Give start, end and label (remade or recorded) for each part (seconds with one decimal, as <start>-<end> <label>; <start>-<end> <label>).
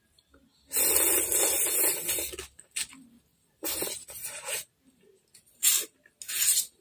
0.0-3.3 recorded; 3.3-4.5 remade; 4.5-6.8 recorded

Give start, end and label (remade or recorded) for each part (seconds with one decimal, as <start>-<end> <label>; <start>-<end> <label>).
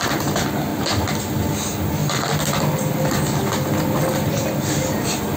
0.0-5.4 recorded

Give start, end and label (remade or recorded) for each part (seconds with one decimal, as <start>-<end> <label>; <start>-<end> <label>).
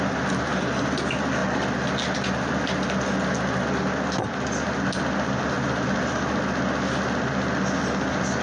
0.0-8.4 recorded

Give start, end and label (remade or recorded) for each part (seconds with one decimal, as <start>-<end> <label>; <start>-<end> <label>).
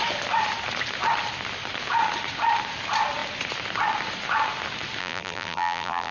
0.0-5.0 recorded; 5.0-6.1 remade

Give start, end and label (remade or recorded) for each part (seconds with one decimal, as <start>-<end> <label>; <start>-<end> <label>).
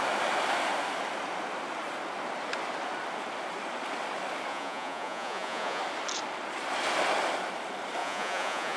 0.0-4.5 recorded; 4.5-5.8 remade; 5.8-8.0 recorded; 8.0-8.8 remade